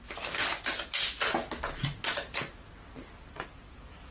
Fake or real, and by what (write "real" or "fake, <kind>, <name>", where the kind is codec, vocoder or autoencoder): real